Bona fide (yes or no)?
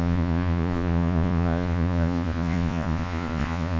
no